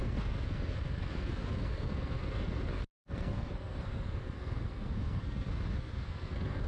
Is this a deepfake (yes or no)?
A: yes